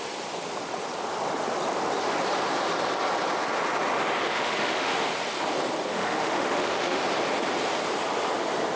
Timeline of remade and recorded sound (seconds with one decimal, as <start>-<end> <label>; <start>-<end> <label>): 0.0-4.2 recorded; 4.2-4.9 remade; 4.9-5.9 recorded; 5.9-7.0 remade; 7.0-8.8 recorded

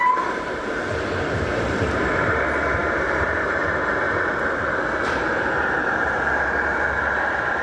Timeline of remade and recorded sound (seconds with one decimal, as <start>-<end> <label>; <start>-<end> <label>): 0.0-7.6 remade

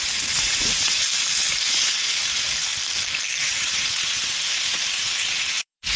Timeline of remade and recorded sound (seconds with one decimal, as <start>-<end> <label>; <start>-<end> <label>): 0.0-1.0 remade; 1.0-1.7 recorded; 1.7-2.7 remade; 2.7-3.4 recorded; 3.4-6.0 remade

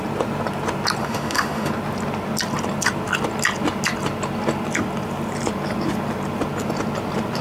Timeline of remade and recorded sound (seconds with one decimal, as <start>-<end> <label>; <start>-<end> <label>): 0.0-1.0 recorded; 1.0-1.7 remade; 1.7-7.4 recorded

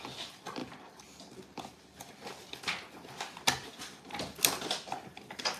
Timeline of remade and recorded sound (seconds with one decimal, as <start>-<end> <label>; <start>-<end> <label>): 0.0-5.0 recorded; 5.0-5.6 remade